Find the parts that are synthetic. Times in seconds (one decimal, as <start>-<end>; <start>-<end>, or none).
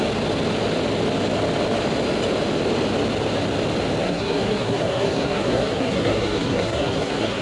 4.0-7.4